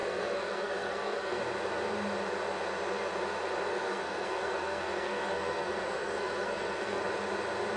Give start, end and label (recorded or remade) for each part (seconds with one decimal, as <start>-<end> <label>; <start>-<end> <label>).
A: 0.0-1.4 remade; 1.4-3.7 recorded; 3.7-7.0 remade; 7.0-7.8 recorded